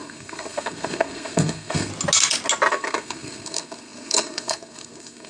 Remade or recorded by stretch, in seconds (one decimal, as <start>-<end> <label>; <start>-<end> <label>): 0.0-1.9 remade; 1.9-2.7 recorded; 2.7-5.3 remade